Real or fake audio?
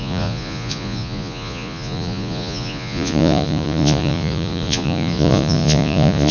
fake